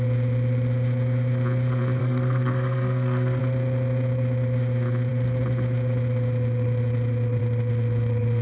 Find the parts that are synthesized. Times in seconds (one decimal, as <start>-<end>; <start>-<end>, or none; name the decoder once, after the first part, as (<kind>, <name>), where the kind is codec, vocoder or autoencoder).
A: 2.0-3.4 (codec, SNAC)